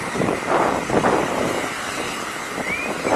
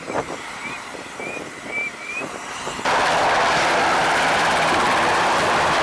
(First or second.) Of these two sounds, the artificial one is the second